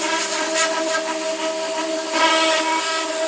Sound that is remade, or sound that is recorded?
recorded